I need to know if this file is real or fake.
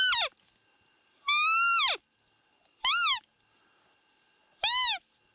real